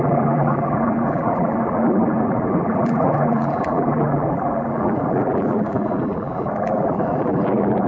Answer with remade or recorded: remade